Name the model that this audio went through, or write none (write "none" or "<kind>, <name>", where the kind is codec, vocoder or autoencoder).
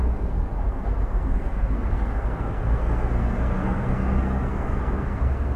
codec, SNAC